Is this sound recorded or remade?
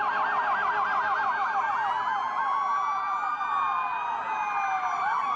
recorded